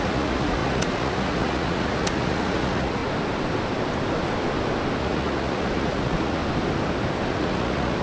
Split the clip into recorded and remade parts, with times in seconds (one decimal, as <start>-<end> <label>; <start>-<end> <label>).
0.0-3.0 remade; 3.0-5.0 recorded; 5.0-6.4 remade; 6.4-7.3 recorded; 7.3-8.0 remade